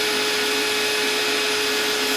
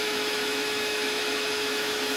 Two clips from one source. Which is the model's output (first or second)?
second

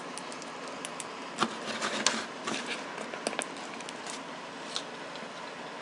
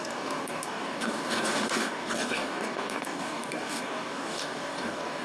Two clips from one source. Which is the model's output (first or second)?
second